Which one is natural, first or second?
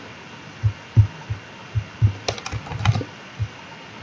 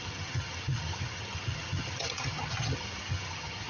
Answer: first